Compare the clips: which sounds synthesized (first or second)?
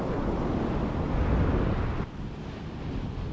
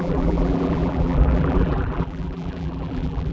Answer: second